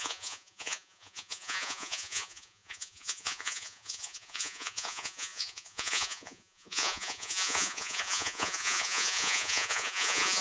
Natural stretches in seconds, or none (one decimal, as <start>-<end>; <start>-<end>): none